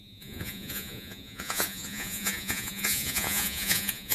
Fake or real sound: fake